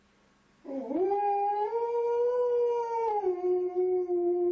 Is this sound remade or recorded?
recorded